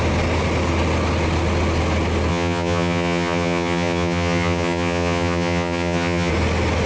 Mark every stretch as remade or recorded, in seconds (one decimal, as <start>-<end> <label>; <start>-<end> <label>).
0.0-2.3 recorded; 2.3-6.3 remade; 6.3-6.9 recorded